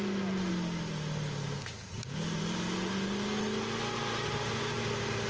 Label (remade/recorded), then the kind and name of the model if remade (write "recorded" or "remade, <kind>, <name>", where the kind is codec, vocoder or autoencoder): recorded